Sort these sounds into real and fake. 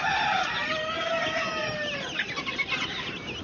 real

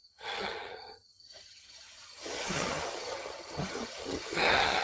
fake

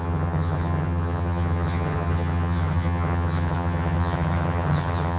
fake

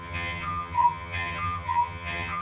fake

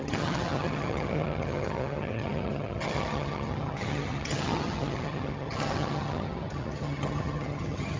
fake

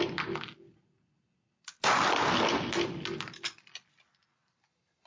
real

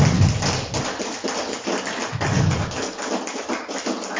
real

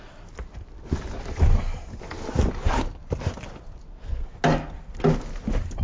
real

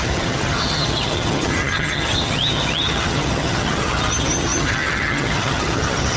fake